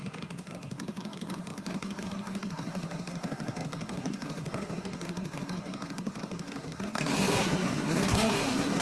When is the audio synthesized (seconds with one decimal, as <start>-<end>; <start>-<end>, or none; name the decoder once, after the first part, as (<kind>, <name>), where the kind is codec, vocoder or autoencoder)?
0.0-8.8 (codec, SNAC)